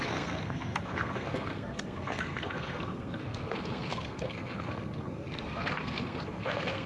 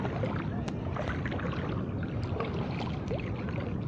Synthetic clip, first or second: first